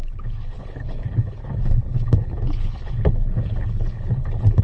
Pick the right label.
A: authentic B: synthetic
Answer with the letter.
B